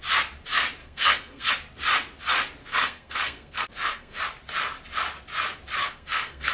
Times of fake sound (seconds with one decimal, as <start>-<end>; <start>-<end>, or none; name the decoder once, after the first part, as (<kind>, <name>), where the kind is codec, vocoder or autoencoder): 0.8-1.5 (codec, SNAC); 2.6-4.2; 5.8-6.5